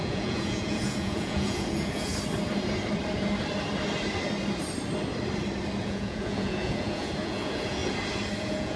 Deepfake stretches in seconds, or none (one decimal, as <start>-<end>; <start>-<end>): 0.0-2.1; 5.8-7.8; 8.4-8.8

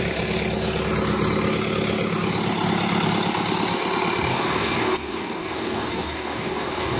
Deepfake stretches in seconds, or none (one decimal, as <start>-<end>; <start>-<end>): 4.3-7.0

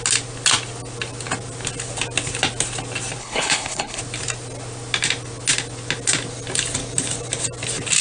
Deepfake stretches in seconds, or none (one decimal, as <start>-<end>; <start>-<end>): 3.2-4.0

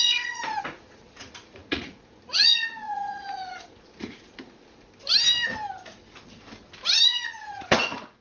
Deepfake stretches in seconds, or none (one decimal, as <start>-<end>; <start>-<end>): 0.0-4.9; 7.0-8.2

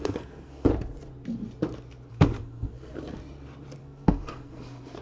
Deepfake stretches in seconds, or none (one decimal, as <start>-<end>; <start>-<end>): 0.0-0.7; 2.1-2.9; 3.8-5.0

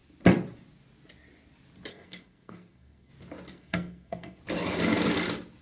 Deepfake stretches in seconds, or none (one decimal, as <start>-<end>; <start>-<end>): 1.9-3.1; 3.5-4.4

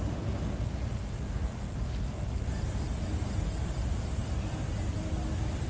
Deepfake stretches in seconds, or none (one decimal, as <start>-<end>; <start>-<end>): none

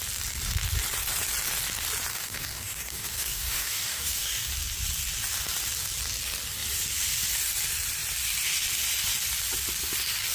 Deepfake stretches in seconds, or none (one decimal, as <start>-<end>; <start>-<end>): 2.1-4.5